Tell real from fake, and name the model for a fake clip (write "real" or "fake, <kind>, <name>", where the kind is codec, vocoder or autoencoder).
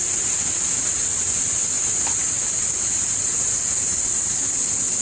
real